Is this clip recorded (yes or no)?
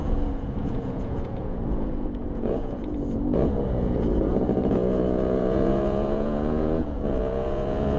no